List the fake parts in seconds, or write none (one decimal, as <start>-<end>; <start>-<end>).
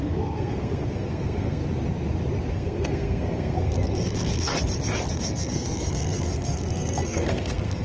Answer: 0.0-1.6; 2.5-4.5; 5.1-7.8